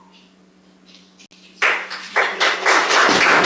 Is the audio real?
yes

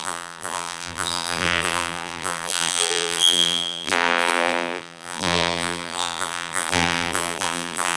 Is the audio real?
no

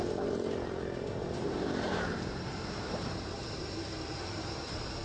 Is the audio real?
no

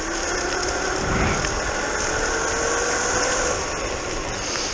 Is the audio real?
yes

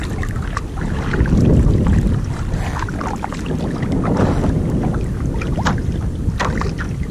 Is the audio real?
yes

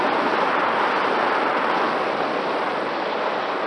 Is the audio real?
yes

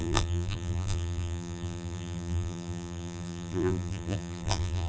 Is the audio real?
no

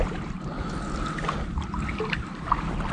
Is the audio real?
yes